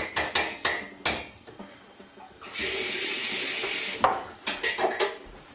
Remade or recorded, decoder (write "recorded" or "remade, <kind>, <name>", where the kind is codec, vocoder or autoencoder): recorded